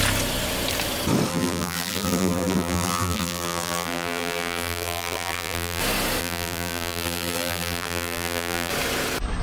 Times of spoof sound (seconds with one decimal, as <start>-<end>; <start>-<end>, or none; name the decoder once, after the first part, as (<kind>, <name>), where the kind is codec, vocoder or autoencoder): 1.3-5.8 (vocoder, BigVGAN v2); 6.2-8.7